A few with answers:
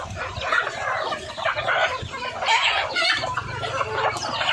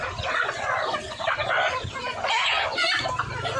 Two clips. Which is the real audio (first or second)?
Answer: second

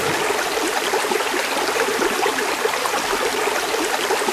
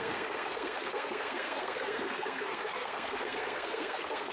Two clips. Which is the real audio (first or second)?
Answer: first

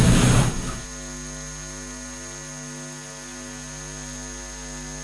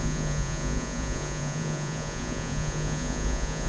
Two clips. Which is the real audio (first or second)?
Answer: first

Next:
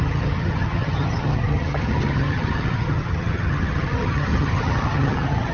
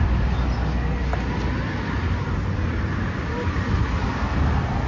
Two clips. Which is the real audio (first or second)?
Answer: second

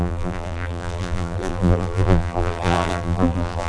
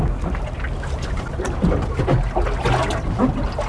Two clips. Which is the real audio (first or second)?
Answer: second